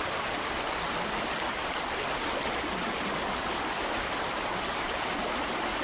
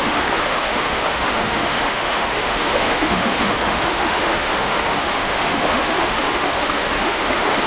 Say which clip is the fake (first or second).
second